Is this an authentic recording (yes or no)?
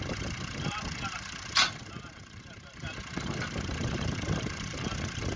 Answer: yes